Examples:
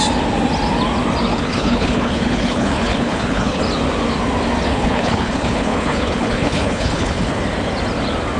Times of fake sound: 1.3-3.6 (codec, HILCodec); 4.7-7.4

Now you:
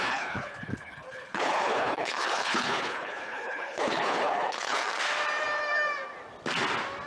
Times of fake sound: 0.0-4.9 (codec, HILCodec)

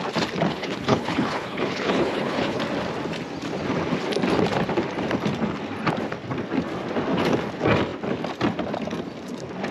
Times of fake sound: 0.5-2.6 (codec, HILCodec)

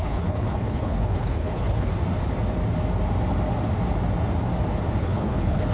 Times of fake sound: 0.0-1.9 (codec, HILCodec); 5.0-5.7